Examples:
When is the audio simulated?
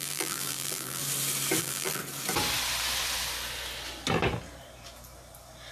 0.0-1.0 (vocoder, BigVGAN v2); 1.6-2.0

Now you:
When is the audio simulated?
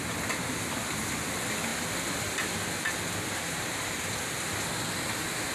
none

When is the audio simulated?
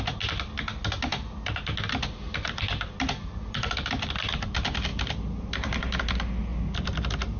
4.9-6.0 (vocoder, BigVGAN v2)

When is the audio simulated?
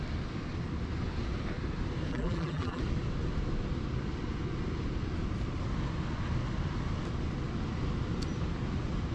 2.1-2.8 (vocoder, BigVGAN v2)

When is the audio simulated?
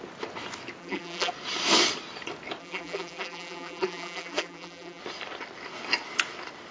0.8-1.3 (vocoder, BigVGAN v2); 2.6-5.0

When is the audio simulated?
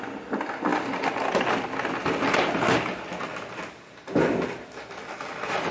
none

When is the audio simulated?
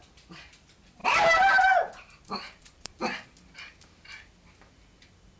1.0-3.0 (vocoder, BigVGAN v2)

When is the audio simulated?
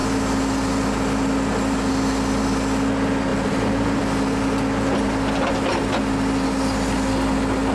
3.3-4.0 (vocoder, BigVGAN v2)